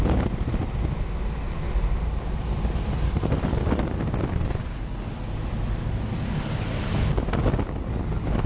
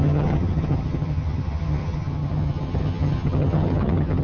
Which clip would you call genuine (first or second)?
first